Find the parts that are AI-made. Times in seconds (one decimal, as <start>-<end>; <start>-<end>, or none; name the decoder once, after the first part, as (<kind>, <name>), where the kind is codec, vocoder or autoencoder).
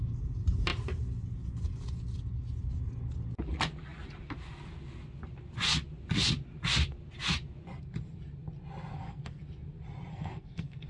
8.9-9.4 (codec, SNAC); 10.1-10.9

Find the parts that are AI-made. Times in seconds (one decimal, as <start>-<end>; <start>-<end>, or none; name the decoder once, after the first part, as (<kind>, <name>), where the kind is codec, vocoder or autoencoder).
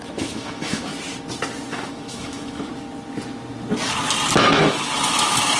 0.0-0.9 (autoencoder, DAC-VAE); 1.7-2.7; 4.5-5.6